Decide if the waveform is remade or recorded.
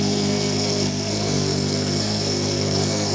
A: remade